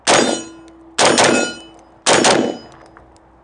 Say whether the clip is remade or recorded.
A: recorded